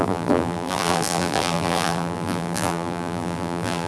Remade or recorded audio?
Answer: remade